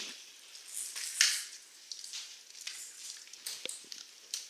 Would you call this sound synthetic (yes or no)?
no